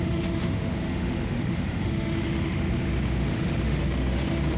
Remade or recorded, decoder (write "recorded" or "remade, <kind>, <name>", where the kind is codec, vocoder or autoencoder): remade, autoencoder, DAC-VAE